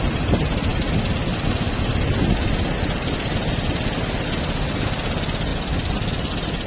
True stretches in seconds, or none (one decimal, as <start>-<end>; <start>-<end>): 0.0-5.5